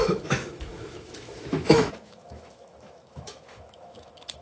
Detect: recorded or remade remade